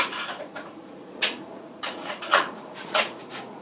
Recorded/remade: remade